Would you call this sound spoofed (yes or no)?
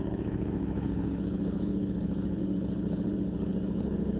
yes